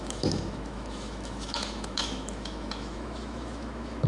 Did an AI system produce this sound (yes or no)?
yes